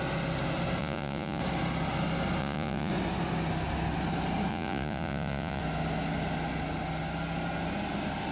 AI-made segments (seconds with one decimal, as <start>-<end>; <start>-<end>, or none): 0.8-1.4; 2.4-2.9; 4.5-5.6